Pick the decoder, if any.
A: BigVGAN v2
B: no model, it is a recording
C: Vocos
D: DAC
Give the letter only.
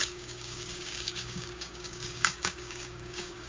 D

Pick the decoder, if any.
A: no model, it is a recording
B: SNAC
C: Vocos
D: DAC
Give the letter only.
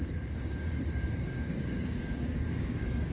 D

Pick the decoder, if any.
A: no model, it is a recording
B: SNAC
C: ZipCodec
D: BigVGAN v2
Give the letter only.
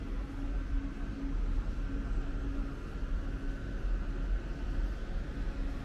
A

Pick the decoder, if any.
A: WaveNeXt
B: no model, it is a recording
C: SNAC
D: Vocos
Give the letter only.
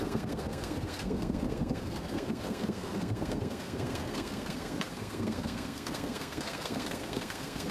C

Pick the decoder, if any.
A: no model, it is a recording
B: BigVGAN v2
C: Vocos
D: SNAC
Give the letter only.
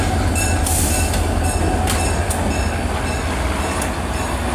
A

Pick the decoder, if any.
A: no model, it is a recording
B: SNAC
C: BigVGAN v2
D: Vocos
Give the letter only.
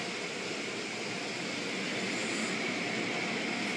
A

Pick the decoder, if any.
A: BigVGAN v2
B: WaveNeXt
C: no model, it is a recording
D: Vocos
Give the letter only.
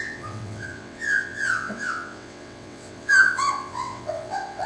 B